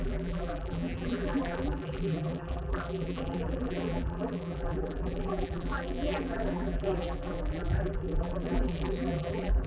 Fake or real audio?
fake